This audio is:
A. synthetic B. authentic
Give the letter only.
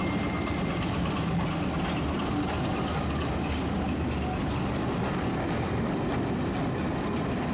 B